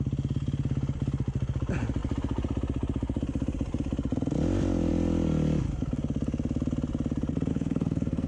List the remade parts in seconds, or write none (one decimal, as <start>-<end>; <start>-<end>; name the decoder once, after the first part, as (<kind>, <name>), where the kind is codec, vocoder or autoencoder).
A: 7.5-8.3 (codec, SNAC)